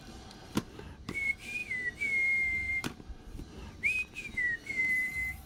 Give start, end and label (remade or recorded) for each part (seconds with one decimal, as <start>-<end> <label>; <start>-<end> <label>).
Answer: 0.0-1.6 remade; 1.6-2.7 recorded; 2.7-5.5 remade